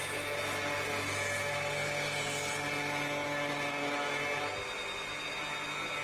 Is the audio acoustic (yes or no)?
yes